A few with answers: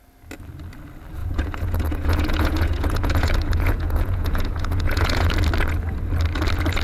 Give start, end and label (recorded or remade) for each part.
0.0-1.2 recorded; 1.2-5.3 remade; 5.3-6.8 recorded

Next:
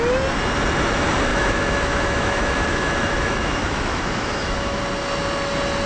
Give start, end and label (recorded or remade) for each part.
0.0-1.3 recorded; 1.3-4.8 remade; 4.8-5.9 recorded

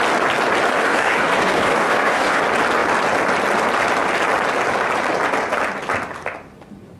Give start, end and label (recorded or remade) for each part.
0.0-0.8 recorded; 0.8-2.4 remade; 2.4-7.0 recorded

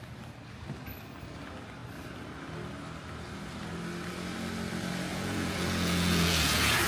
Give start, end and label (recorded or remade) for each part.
0.0-5.1 recorded; 5.1-6.9 remade

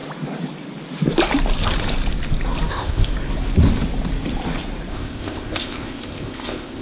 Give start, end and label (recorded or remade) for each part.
0.0-2.7 recorded; 2.7-3.1 remade; 3.1-4.9 recorded; 4.9-6.8 remade

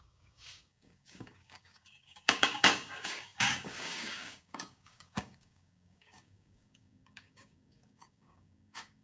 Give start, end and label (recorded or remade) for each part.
0.0-9.0 remade